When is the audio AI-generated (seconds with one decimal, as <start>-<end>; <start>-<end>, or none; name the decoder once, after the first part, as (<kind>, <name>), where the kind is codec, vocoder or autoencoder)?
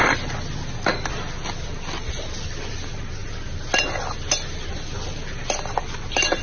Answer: none